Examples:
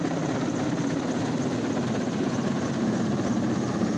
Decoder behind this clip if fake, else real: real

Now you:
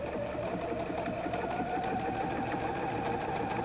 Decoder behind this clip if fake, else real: real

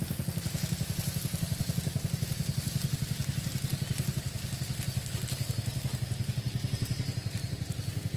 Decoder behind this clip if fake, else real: real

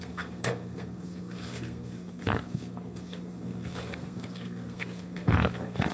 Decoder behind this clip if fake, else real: fake, codec, SNAC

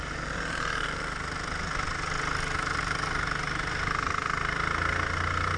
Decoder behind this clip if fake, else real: real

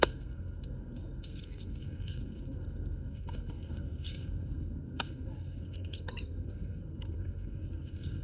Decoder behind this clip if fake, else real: fake, codec, SNAC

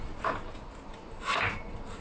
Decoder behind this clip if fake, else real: real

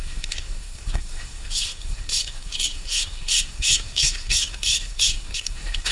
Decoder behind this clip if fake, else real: fake, codec, SNAC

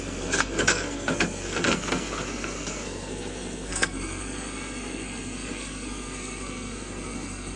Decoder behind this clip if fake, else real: fake, codec, SNAC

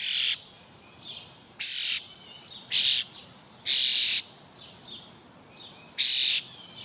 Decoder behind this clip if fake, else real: real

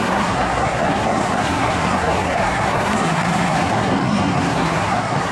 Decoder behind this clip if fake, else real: fake, codec, SNAC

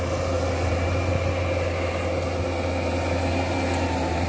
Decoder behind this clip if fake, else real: real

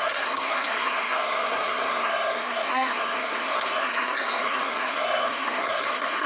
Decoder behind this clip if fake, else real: fake, codec, SNAC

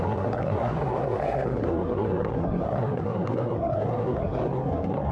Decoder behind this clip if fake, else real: fake, codec, SNAC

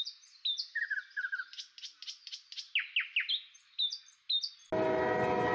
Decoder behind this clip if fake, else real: real